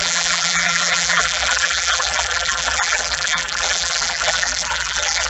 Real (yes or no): no